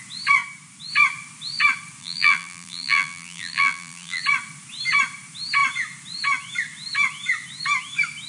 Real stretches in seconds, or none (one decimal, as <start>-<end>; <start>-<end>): 0.0-2.0; 4.2-8.3